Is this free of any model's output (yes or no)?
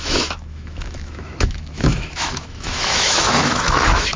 no